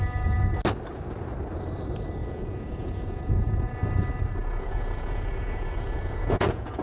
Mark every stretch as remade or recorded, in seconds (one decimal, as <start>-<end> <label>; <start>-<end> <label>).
0.0-2.2 recorded; 2.2-3.7 remade; 3.7-4.4 recorded; 4.4-6.8 remade